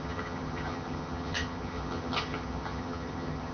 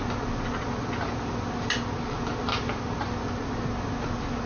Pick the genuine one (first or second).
second